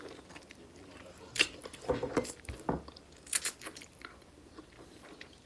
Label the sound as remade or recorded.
recorded